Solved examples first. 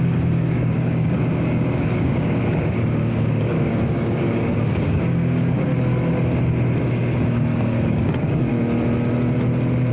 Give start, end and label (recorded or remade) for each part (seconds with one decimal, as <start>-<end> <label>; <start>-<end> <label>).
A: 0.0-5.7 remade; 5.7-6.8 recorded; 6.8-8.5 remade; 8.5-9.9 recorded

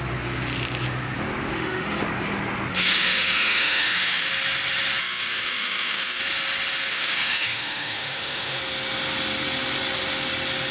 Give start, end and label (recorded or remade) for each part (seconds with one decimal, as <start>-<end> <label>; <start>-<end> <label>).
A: 0.0-1.5 recorded; 1.5-2.0 remade; 2.0-2.7 recorded; 2.7-4.3 remade; 4.3-5.0 recorded; 5.0-6.2 remade; 6.2-6.9 recorded; 6.9-8.6 remade; 8.6-10.7 recorded

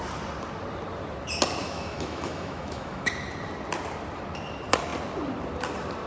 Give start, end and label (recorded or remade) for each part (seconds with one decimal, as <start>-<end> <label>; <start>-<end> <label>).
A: 0.0-1.6 recorded; 1.6-3.1 remade; 3.1-6.1 recorded

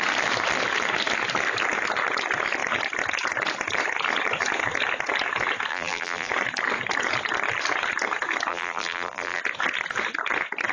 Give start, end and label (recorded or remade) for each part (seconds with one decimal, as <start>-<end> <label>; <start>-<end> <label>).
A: 0.0-5.7 recorded; 5.7-6.3 remade; 6.3-8.5 recorded; 8.5-9.4 remade; 9.4-10.7 recorded

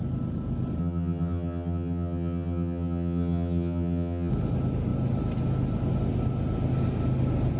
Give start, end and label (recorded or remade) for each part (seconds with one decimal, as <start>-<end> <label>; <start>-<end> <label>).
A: 0.0-0.8 recorded; 0.8-4.3 remade; 4.3-7.6 recorded

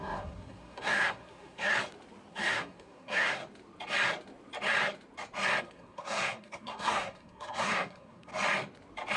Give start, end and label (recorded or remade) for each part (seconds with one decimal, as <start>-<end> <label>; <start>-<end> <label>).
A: 0.0-1.7 remade; 1.7-2.3 recorded; 2.3-3.4 remade; 3.4-5.6 recorded; 5.6-8.3 remade; 8.3-9.2 recorded